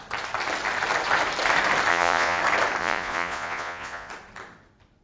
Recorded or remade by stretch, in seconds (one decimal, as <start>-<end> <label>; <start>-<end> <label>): 0.0-1.9 recorded; 1.9-2.4 remade; 2.4-2.8 recorded; 2.8-4.1 remade; 4.1-5.0 recorded